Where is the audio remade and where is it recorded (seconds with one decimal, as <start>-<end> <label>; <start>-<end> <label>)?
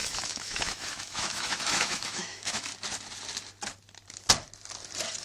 0.0-2.7 remade; 2.7-5.2 recorded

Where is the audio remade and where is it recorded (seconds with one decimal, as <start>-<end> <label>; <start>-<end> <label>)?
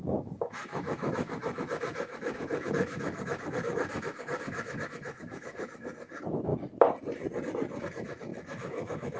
0.0-6.5 remade; 6.5-7.8 recorded; 7.8-9.2 remade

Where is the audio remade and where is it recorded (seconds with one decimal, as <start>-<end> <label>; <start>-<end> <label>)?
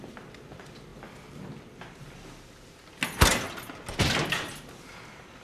0.0-5.4 recorded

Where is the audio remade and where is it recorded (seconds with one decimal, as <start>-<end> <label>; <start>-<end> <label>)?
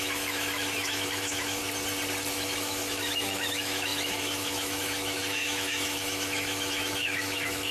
0.0-1.6 remade; 1.6-2.3 recorded; 2.3-7.7 remade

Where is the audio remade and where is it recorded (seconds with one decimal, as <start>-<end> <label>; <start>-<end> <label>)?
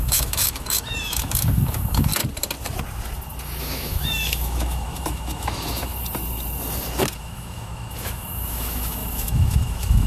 0.0-2.1 remade; 2.1-3.6 recorded; 3.6-5.9 remade; 5.9-7.2 recorded; 7.2-10.1 remade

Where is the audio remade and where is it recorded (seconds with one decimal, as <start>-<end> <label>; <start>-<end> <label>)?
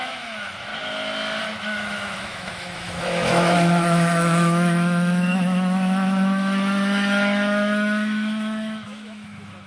0.0-0.7 remade; 0.7-1.4 recorded; 1.4-9.7 remade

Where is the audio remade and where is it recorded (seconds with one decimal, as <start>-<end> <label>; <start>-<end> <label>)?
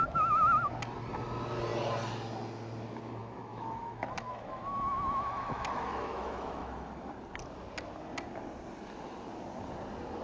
0.0-3.2 recorded; 3.2-7.1 remade; 7.1-10.2 recorded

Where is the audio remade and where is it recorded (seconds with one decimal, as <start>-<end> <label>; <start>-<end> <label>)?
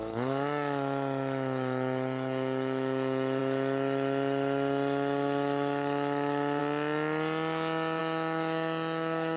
0.0-6.6 remade; 6.6-8.0 recorded; 8.0-9.4 remade